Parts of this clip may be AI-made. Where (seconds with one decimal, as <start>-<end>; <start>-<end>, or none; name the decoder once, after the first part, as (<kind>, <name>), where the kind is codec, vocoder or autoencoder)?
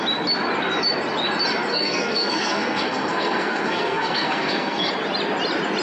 1.7-4.9 (codec, SNAC)